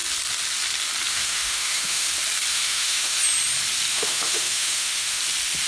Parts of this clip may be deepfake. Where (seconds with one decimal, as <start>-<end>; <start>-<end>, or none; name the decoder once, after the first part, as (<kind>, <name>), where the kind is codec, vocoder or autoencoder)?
1.1-2.1 (autoencoder, DAC-VAE); 2.5-3.2; 3.9-5.2